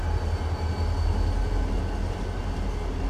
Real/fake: real